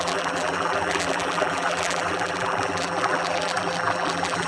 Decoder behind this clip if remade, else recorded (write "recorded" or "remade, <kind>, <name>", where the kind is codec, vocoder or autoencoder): remade, vocoder, BigVGAN v2